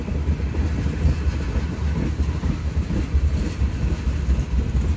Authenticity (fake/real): real